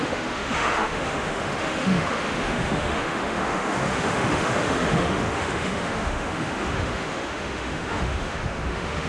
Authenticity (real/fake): fake